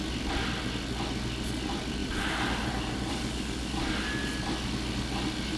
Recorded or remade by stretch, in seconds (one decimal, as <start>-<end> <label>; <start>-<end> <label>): 0.0-2.0 recorded; 2.0-3.1 remade; 3.1-5.6 recorded